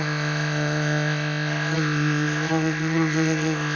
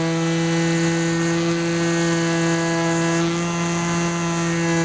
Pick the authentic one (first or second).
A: second